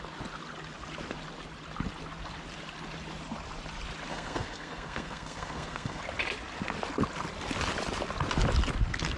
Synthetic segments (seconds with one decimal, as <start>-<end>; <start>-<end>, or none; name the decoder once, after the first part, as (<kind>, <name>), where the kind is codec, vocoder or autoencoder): 4.1-6.0 (codec, SNAC)